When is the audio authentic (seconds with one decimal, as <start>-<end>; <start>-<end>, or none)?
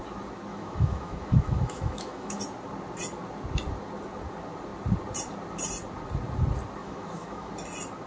0.0-0.5; 2.4-6.8; 7.5-8.1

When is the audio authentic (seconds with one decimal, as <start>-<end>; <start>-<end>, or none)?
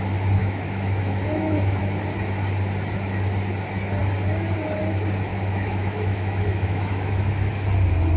0.0-0.4; 1.8-5.3; 7.5-8.2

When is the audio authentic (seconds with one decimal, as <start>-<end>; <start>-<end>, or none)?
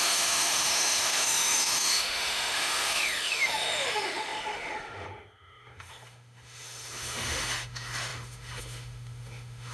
none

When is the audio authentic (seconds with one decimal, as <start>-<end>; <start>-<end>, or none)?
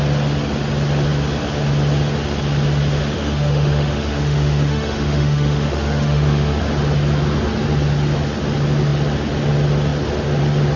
0.0-3.0; 6.6-10.8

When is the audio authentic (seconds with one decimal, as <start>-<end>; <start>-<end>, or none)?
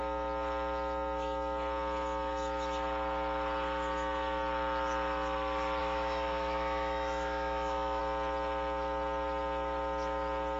0.0-5.8; 8.0-10.6